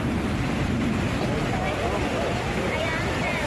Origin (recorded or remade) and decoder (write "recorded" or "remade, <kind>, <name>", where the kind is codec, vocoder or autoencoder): recorded